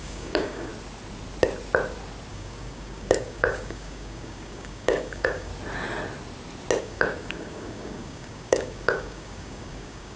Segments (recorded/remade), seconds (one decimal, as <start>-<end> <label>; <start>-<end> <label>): 0.0-0.7 remade; 0.7-2.3 recorded; 2.3-5.5 remade; 5.5-6.8 recorded; 6.8-10.2 remade